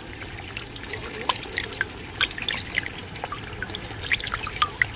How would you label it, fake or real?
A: real